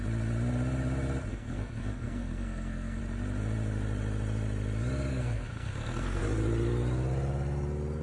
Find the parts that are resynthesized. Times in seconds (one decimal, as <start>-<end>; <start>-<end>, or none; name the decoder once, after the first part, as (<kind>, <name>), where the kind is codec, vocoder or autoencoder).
1.3-3.0 (codec, SNAC); 5.1-6.2